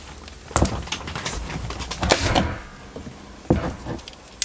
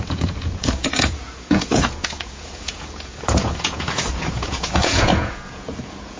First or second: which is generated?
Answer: second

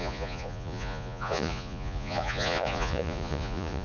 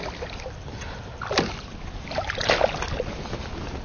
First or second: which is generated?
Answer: first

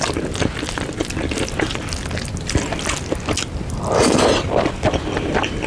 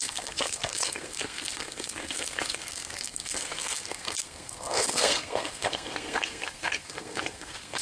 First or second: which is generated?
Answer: second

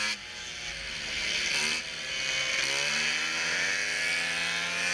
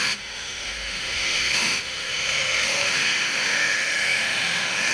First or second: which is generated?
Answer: second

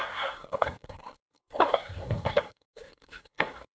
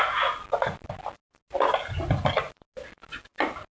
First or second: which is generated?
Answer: first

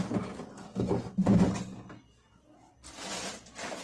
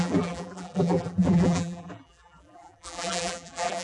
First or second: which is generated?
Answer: second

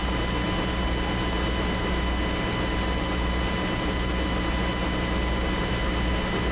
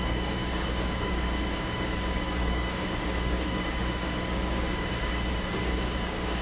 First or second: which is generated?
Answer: second